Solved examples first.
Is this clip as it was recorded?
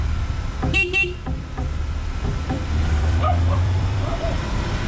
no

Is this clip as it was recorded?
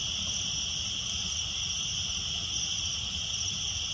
yes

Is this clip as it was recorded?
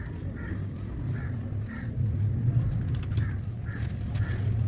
yes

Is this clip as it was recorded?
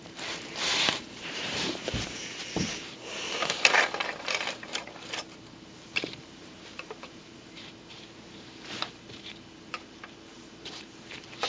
no